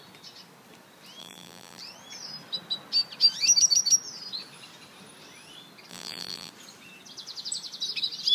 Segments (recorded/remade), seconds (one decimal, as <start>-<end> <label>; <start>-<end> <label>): 0.0-1.2 recorded; 1.2-1.8 remade; 1.8-5.9 recorded; 5.9-6.5 remade; 6.5-8.3 recorded